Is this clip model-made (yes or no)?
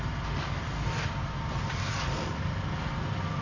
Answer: no